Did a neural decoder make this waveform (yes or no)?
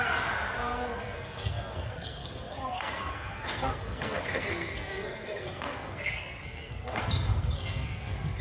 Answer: yes